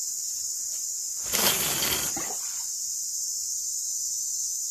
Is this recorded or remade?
recorded